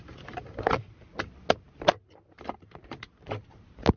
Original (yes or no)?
yes